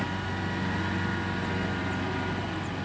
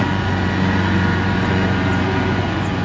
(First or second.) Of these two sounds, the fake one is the second